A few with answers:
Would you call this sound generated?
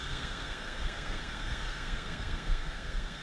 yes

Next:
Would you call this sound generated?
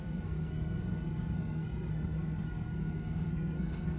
yes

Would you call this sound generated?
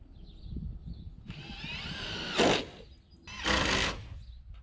no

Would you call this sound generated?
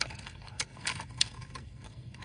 yes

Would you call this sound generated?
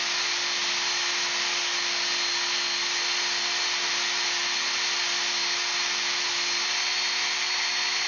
no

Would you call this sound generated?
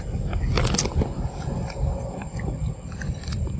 no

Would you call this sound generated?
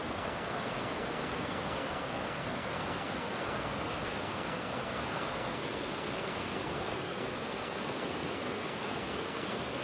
yes